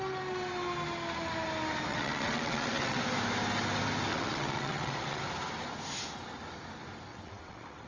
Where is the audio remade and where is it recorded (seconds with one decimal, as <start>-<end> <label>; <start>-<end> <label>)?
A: 0.0-1.9 recorded; 1.9-3.0 remade; 3.0-4.1 recorded; 4.1-5.2 remade; 5.2-7.1 recorded; 7.1-7.9 remade